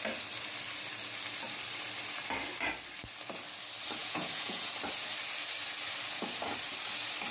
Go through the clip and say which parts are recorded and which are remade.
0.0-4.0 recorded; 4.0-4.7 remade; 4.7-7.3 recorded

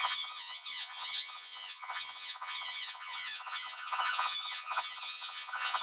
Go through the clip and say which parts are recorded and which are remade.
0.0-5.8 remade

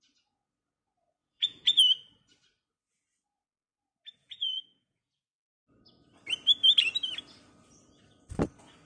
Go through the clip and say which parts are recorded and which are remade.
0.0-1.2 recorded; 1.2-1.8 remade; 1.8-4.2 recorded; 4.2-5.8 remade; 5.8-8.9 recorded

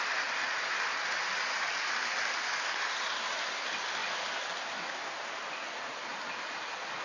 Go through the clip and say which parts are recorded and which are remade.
0.0-7.0 recorded

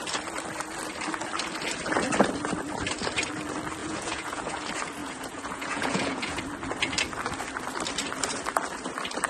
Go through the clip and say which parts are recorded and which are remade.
0.0-3.8 recorded; 3.8-4.6 remade; 4.6-5.0 recorded; 5.0-6.4 remade; 6.4-9.3 recorded